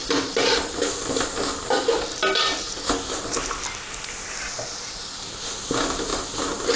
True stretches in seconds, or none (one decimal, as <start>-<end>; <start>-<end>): 0.0-6.8